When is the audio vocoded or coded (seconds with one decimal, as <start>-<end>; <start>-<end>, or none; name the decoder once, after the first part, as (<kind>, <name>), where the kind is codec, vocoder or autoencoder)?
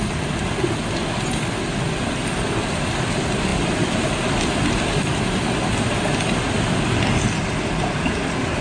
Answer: none